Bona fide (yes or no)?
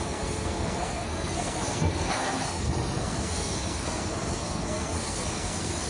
no